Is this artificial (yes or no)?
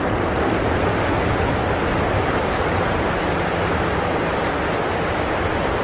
no